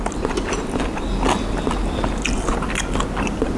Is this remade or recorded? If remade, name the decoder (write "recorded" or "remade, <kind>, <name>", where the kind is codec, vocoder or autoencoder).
recorded